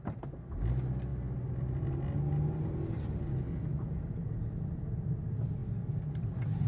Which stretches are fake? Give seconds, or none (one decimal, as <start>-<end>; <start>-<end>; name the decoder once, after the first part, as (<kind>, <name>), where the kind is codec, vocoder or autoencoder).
none